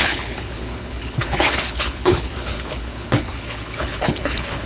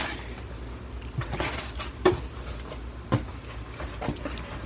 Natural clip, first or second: second